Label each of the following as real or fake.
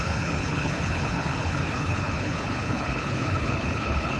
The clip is fake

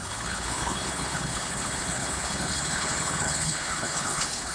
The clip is fake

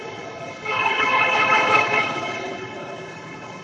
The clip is fake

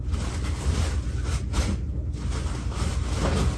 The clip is real